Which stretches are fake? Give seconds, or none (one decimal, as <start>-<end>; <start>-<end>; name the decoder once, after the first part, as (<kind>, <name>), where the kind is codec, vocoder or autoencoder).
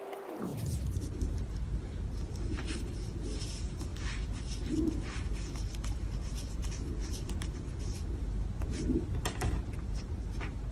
0.0-10.7 (vocoder, BigVGAN v2)